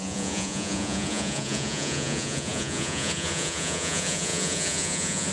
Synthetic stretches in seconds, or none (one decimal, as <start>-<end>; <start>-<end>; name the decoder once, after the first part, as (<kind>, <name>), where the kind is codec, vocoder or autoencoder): 0.0-5.3 (vocoder, Vocos)